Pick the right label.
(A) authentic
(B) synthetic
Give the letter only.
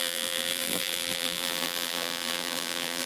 B